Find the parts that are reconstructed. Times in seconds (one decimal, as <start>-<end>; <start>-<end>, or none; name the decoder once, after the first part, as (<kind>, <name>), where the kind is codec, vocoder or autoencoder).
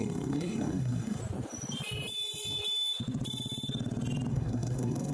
0.0-1.2 (codec, SNAC); 4.3-5.1